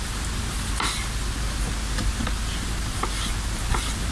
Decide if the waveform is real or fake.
real